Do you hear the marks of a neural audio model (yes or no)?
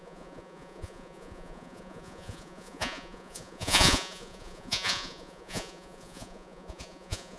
yes